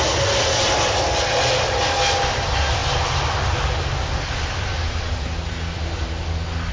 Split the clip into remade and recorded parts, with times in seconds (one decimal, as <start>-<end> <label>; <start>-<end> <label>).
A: 0.0-6.7 recorded